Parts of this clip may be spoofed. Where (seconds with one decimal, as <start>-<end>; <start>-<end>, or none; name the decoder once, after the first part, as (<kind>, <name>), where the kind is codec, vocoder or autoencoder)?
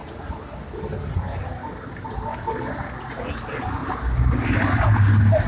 none